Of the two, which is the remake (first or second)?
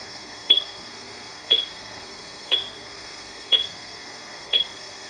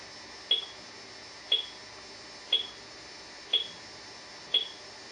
first